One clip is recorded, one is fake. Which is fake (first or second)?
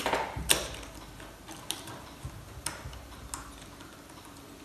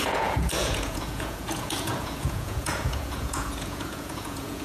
second